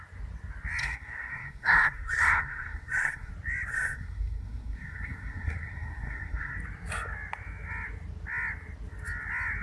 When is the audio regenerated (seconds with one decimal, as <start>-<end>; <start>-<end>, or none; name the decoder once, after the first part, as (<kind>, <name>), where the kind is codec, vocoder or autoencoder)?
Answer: 0.8-3.3 (codec, SNAC); 3.7-6.5